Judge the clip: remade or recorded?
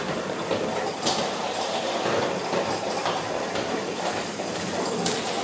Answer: recorded